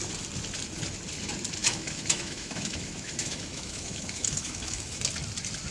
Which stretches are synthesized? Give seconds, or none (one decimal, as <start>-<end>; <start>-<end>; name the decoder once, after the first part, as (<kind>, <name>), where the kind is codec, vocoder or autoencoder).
1.6-5.0 (autoencoder, DAC-VAE)